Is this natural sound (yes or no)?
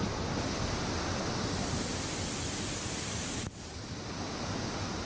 yes